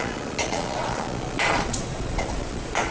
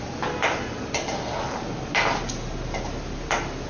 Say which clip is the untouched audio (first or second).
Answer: second